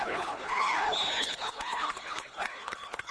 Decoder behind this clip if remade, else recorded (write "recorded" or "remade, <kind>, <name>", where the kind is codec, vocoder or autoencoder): remade, codec, HILCodec